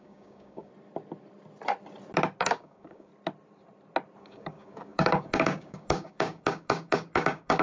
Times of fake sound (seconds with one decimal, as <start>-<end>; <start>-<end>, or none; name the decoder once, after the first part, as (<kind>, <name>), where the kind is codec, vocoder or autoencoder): 0.0-0.7 (codec, DAC); 2.4-3.1; 4.2-7.6